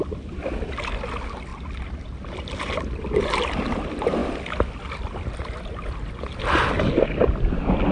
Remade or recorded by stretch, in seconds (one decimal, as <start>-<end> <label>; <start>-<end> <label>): 0.0-7.9 recorded